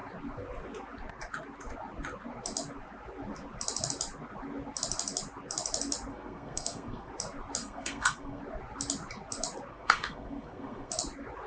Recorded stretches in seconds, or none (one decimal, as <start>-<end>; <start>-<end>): 0.0-6.1; 7.1-7.6; 8.4-9.7; 10.9-11.5